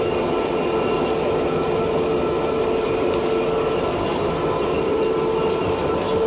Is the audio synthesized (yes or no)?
no